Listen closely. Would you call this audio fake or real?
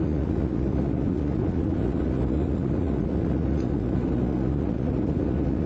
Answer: fake